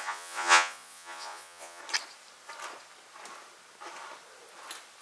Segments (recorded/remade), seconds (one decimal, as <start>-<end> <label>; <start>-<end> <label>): 0.0-1.8 remade; 1.8-5.0 recorded